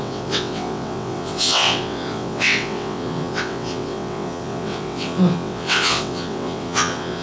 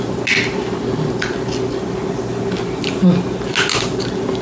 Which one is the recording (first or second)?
second